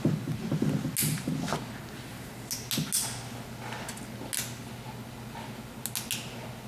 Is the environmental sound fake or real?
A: real